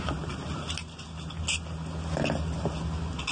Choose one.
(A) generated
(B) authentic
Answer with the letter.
B